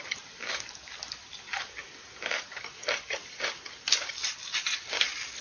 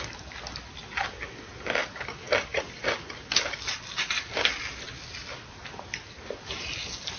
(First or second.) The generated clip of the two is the first